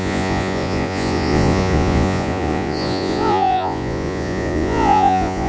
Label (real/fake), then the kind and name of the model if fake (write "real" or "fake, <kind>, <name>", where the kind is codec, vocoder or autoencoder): fake, vocoder, Vocos